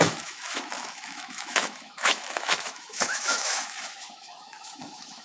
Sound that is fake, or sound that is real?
fake